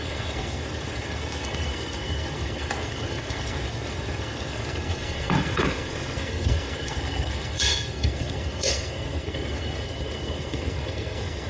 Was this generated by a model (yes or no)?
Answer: yes